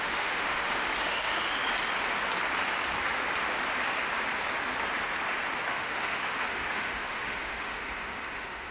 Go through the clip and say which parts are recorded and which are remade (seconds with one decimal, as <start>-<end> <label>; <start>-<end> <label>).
0.0-1.6 remade; 1.6-5.7 recorded; 5.7-8.7 remade